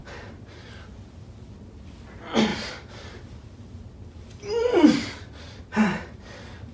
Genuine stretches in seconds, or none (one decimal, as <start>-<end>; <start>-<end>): 0.0-6.7